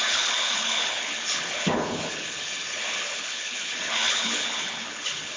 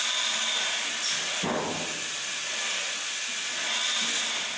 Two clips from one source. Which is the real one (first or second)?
second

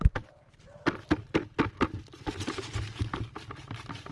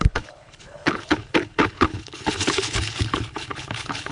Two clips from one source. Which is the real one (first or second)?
first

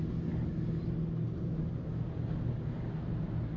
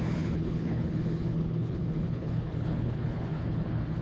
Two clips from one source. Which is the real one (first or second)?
first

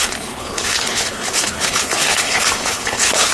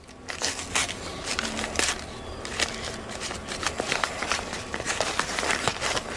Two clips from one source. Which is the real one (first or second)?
second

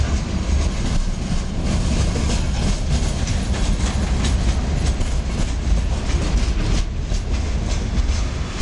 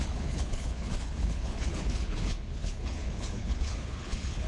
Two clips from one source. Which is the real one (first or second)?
first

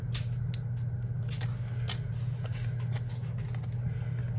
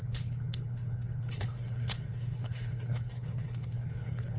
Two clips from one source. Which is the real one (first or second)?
first